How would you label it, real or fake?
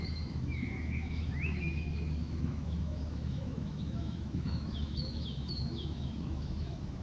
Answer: fake